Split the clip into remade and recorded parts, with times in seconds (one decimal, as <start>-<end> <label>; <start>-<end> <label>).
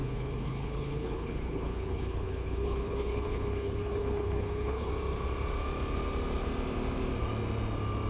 0.0-4.9 remade; 4.9-8.1 recorded